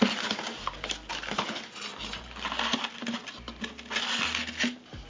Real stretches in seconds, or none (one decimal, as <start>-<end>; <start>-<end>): 0.0-5.1